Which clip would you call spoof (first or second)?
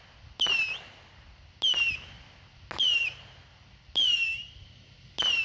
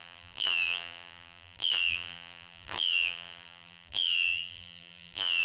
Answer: second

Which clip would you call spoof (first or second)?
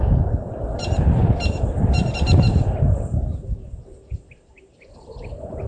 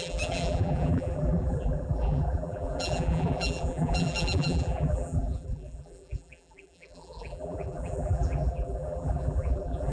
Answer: second